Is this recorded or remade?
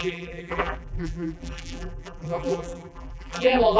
remade